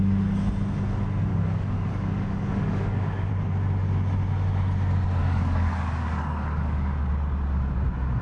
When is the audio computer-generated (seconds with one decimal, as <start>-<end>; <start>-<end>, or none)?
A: 1.3-3.3; 5.2-7.1